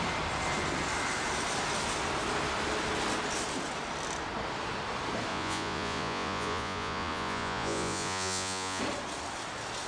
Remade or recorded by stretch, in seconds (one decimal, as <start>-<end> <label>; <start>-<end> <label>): 0.0-5.3 recorded; 5.3-8.8 remade; 8.8-9.9 recorded